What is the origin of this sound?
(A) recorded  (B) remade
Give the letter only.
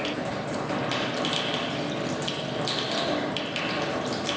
A